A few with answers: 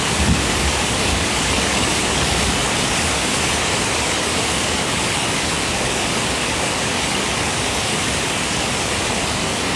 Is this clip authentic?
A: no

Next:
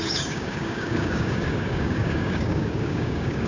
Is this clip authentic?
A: no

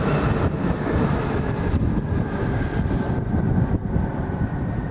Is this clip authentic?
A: yes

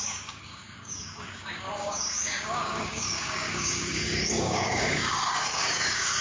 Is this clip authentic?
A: no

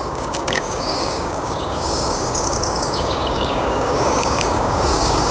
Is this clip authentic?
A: no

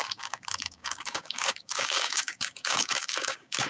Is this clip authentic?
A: no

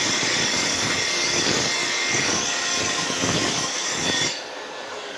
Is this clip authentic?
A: no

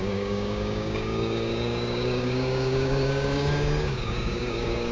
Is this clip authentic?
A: no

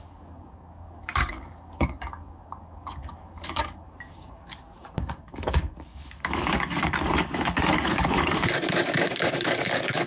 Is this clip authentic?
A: no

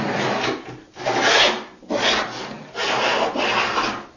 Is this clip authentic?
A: yes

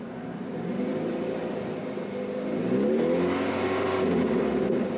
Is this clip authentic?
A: yes